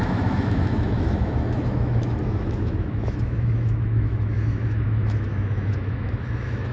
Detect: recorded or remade remade